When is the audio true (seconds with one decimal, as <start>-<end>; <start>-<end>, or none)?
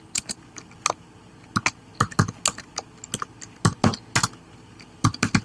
0.0-5.4